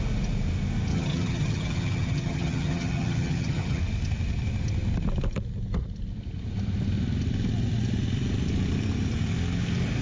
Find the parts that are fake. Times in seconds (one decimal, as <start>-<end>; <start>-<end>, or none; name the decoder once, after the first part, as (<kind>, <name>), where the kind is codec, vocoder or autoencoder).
0.9-3.8 (vocoder, HiFi-GAN)